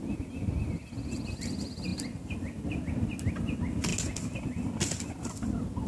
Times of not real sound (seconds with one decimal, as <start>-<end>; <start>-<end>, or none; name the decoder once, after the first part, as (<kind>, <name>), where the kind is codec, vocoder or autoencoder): none